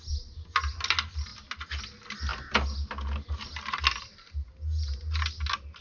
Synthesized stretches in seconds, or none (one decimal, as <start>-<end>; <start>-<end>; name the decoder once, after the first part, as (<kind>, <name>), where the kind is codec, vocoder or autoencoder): none

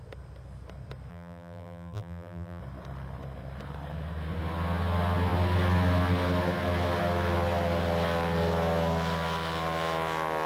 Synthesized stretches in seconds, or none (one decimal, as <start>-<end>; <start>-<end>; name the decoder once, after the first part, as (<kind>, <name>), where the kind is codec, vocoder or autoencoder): 1.1-2.6 (vocoder, BigVGAN v2)